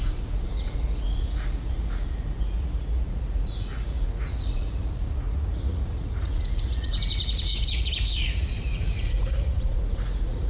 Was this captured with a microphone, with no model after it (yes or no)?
no